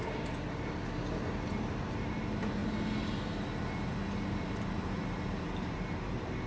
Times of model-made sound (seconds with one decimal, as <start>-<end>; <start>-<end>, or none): 0.0-1.0; 1.6-2.6; 4.4-6.5

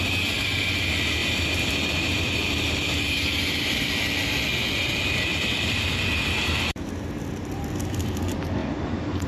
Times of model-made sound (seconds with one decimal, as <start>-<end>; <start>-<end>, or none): 1.2-3.9; 5.3-8.2; 8.6-9.3

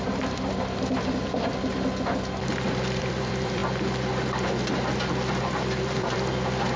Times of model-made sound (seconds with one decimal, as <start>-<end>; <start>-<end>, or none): 0.0-1.7; 3.0-3.6; 5.4-6.8

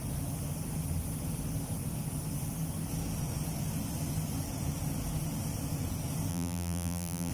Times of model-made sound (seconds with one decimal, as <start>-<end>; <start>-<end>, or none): 6.3-7.3

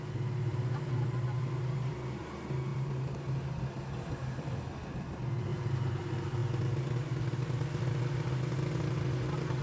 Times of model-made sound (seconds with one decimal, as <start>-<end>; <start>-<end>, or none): 2.7-3.2; 5.5-6.0

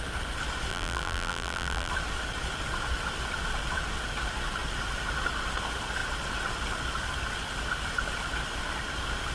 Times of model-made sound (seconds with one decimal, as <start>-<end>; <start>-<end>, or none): 0.7-1.9